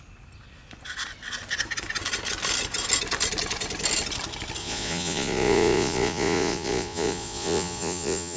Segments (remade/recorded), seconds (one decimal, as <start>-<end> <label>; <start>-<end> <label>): 0.0-4.6 recorded; 4.6-8.4 remade